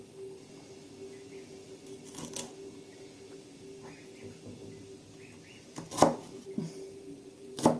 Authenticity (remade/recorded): recorded